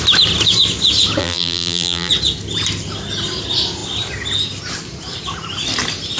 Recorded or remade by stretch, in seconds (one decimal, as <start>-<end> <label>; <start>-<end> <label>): 0.0-1.2 recorded; 1.2-2.1 remade; 2.1-6.2 recorded